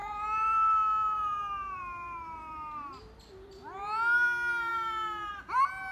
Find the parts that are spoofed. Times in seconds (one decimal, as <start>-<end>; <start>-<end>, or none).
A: 0.0-2.9